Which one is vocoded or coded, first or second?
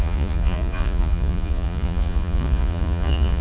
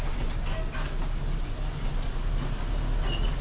first